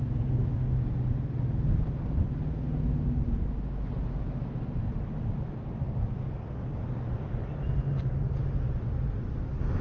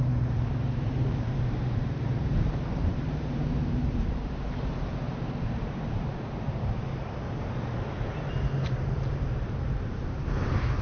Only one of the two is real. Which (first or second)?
first